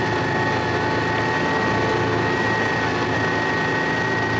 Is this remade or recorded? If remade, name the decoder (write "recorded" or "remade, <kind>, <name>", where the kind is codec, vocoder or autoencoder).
recorded